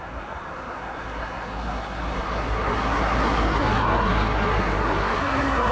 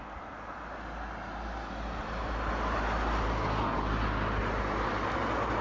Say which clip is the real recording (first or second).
second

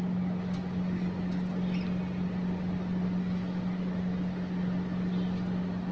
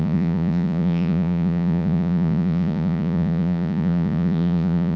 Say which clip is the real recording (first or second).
first